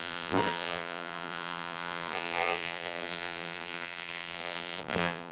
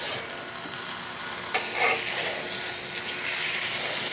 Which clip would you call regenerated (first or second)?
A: first